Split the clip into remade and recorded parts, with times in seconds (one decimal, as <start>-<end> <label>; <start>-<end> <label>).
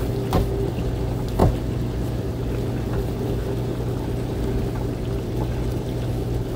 0.0-6.6 recorded